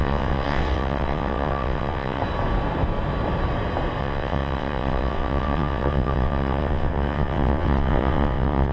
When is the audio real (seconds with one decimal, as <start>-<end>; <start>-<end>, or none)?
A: 2.2-4.0